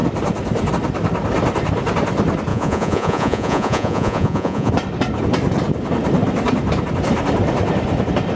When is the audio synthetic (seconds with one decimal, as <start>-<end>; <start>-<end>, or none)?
2.5-4.7